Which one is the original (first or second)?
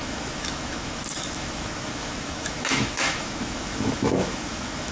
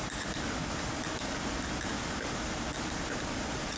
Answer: second